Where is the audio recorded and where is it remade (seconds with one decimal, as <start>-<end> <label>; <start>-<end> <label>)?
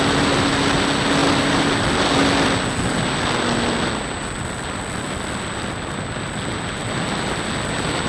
0.0-8.1 recorded